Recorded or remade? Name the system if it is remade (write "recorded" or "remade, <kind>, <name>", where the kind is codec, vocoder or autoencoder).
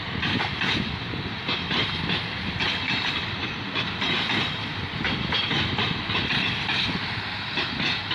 recorded